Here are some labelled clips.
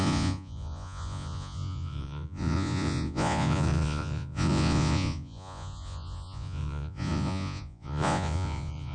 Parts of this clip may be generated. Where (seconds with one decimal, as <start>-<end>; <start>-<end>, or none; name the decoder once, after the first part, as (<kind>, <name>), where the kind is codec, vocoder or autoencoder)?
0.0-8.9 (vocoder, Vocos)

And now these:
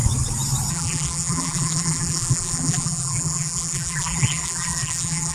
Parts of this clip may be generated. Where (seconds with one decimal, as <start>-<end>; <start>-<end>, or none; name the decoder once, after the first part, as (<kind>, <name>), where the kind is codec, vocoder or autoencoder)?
0.7-5.3 (vocoder, BigVGAN v2)

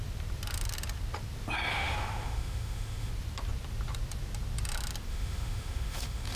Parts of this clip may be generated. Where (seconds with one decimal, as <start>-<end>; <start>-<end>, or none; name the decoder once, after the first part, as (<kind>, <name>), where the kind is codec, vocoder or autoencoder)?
1.7-3.1 (autoencoder, DAC-VAE); 5.1-6.4

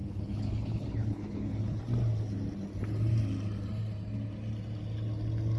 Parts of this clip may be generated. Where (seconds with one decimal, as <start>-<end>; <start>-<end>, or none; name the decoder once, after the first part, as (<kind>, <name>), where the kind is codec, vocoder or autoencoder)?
0.0-1.8 (codec, HILCodec)

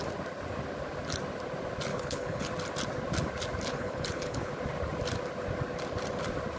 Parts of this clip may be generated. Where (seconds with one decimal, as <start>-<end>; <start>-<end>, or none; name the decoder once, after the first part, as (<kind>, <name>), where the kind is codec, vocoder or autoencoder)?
1.9-2.5 (codec, HILCodec); 3.7-4.5

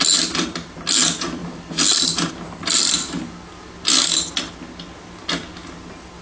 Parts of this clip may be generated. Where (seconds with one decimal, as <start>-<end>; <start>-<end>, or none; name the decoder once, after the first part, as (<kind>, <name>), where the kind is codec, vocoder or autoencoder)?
none